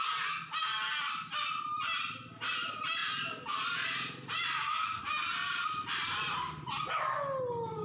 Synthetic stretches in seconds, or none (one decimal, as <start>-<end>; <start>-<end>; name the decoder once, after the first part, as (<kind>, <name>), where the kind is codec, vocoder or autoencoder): none